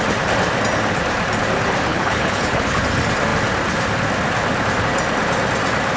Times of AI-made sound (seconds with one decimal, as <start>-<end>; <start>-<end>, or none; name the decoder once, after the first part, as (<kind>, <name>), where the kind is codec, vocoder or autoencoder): 1.9-2.8 (codec, HILCodec)